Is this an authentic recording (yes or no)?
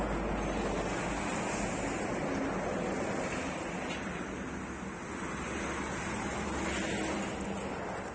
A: yes